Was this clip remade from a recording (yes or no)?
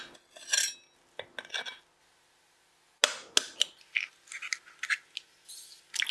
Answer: no